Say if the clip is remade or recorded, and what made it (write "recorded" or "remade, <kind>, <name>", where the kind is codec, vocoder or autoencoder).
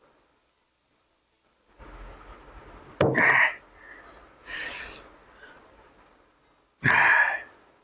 recorded